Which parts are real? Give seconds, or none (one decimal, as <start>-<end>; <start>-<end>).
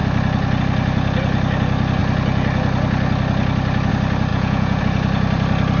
0.0-4.3; 4.8-5.8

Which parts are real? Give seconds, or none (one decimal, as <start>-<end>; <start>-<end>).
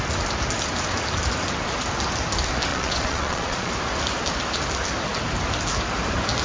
0.0-2.7; 3.7-6.4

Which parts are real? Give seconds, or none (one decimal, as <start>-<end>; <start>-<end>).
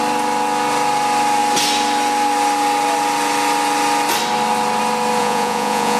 0.0-5.2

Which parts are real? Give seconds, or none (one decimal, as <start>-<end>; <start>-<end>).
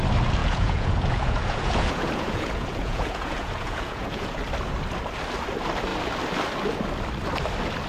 0.0-0.4; 4.4-7.9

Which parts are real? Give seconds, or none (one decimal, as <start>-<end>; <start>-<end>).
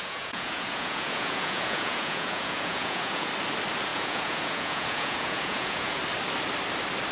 3.3-3.9; 6.0-7.1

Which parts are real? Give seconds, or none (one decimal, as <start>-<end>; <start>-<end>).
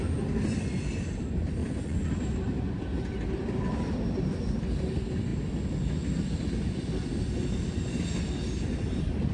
0.0-1.6; 2.1-9.3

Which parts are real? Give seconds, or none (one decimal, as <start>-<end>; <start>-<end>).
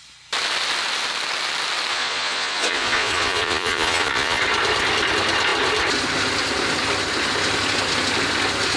0.0-1.9; 4.4-8.8